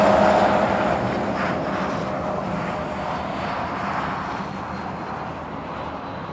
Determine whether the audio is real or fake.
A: real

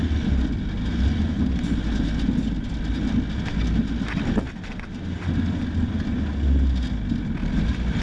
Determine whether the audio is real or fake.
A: real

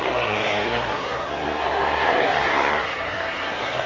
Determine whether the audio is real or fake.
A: fake